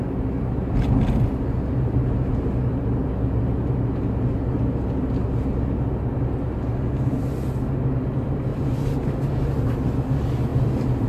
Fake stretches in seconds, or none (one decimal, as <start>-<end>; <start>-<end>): none